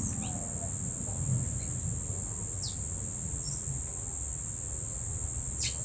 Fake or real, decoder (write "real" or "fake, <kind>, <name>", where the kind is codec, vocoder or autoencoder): real